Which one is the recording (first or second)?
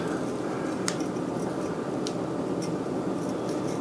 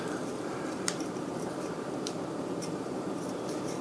first